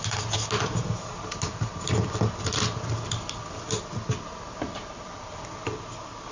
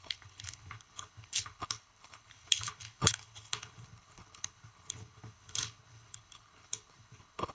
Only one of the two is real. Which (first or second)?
first